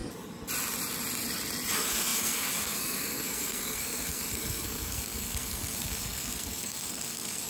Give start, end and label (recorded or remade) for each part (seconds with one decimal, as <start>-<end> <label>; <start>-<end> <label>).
0.0-1.7 recorded; 1.7-7.5 remade